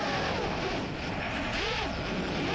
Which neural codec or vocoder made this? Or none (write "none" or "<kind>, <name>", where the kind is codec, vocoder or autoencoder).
none